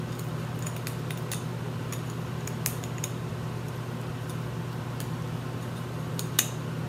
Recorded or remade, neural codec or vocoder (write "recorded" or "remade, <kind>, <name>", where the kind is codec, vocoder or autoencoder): recorded